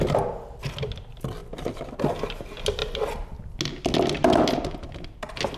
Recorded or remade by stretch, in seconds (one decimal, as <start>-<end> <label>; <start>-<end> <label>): 0.0-5.6 recorded